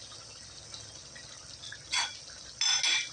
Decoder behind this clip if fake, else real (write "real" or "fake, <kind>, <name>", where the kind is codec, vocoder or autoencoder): real